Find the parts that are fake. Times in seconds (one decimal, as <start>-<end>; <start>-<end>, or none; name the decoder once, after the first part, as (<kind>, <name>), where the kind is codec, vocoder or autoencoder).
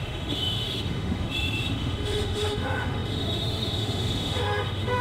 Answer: 0.0-5.0 (autoencoder, DAC-VAE)